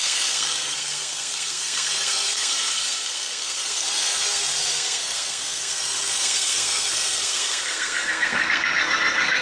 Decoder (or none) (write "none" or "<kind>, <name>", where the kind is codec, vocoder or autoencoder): codec, SNAC